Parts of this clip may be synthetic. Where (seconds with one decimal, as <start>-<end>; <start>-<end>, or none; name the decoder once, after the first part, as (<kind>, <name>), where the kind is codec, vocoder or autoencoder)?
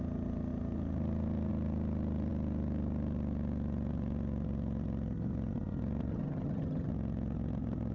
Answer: 6.1-6.9 (vocoder, HiFi-GAN)